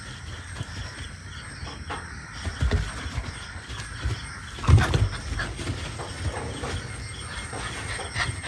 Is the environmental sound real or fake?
real